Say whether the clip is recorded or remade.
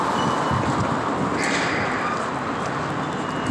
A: recorded